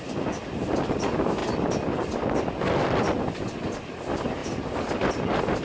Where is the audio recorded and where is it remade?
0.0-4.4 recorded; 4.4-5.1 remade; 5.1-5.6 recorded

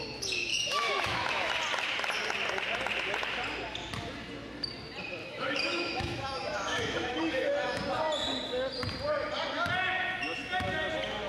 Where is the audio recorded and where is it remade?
0.0-0.5 recorded; 0.5-1.5 remade; 1.5-5.2 recorded; 5.2-7.8 remade; 7.8-11.3 recorded

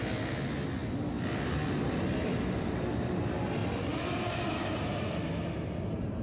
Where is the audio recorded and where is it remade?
0.0-6.2 recorded